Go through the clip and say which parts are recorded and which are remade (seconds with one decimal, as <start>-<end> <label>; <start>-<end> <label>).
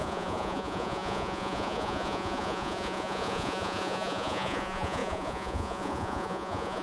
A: 0.0-6.8 remade